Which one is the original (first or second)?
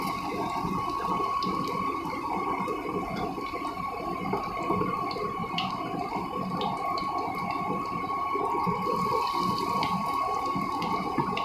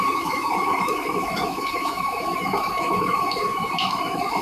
first